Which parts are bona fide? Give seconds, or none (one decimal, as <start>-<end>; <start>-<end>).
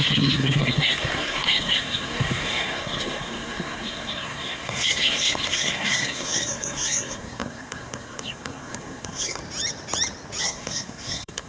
9.4-10.4